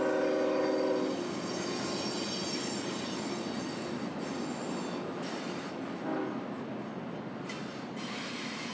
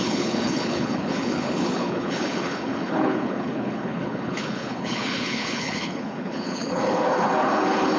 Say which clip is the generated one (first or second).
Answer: second